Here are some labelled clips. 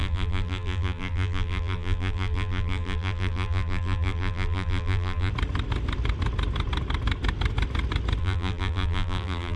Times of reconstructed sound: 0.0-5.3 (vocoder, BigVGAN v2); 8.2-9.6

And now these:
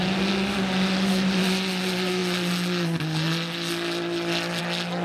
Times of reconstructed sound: none

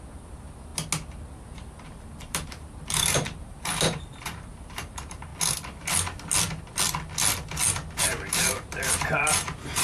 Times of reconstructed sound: 0.0-0.7 (vocoder, BigVGAN v2); 1.3-5.3; 8.0-9.8

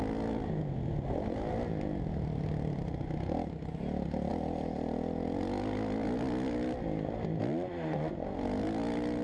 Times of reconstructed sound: none